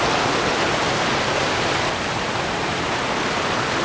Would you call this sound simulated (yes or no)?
no